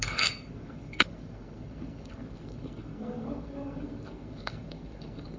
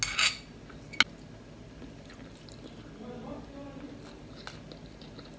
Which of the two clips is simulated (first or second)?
first